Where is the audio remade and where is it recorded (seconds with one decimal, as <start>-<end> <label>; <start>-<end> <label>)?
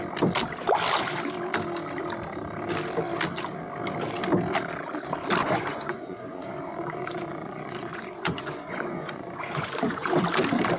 0.0-5.4 recorded; 5.4-10.1 remade; 10.1-10.8 recorded